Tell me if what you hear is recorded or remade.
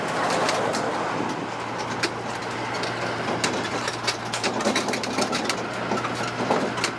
recorded